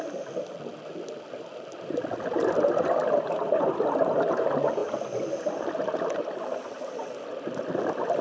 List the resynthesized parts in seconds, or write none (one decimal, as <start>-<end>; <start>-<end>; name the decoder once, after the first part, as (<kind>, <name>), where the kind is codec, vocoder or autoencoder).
0.7-4.1 (vocoder, BigVGAN v2); 4.8-7.7